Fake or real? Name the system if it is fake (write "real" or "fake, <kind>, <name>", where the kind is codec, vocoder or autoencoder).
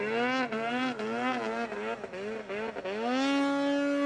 real